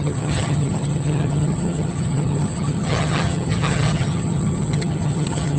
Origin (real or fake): fake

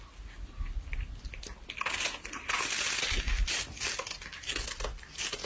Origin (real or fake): real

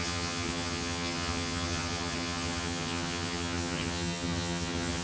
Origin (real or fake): fake